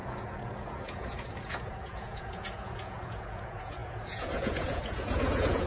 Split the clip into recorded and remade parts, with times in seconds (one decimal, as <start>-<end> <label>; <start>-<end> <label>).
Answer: 0.0-5.7 remade